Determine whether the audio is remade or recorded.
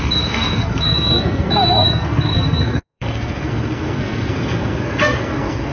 remade